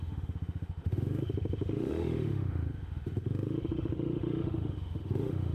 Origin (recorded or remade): remade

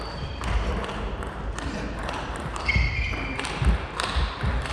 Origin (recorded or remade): recorded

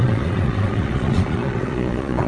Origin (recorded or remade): remade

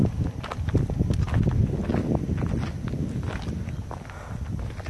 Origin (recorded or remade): recorded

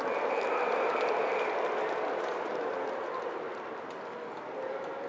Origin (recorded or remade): remade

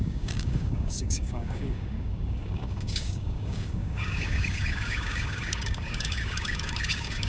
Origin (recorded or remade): remade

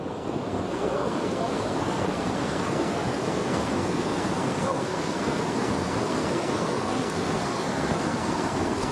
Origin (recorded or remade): remade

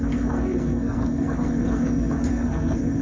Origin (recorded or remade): remade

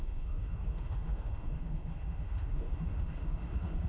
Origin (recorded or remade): remade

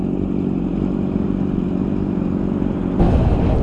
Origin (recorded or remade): remade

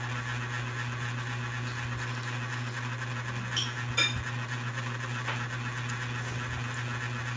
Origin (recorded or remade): recorded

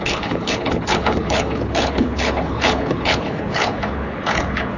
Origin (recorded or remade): remade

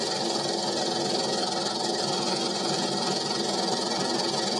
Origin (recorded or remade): recorded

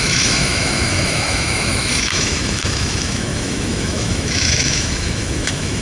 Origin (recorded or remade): remade